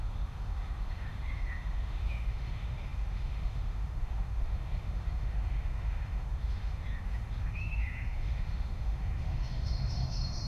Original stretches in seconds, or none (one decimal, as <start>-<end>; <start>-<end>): none